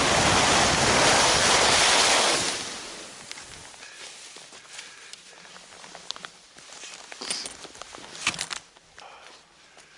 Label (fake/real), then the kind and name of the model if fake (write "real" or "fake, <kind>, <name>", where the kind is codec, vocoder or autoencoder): real